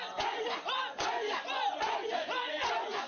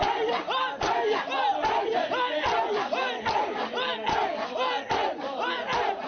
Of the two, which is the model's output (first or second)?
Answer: first